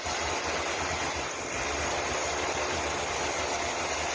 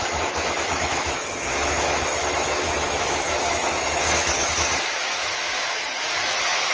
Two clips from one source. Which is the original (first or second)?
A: first